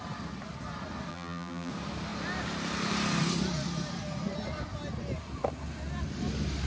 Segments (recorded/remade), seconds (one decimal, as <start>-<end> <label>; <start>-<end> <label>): 0.0-1.1 recorded; 1.1-1.7 remade; 1.7-6.7 recorded